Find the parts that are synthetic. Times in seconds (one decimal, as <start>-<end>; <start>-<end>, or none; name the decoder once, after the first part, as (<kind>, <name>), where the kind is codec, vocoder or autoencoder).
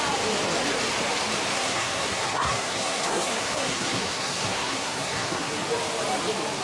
1.5-5.5 (codec, SNAC)